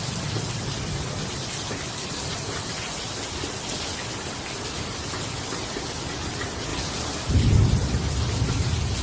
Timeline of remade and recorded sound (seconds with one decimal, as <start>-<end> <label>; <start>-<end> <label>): 0.0-9.0 recorded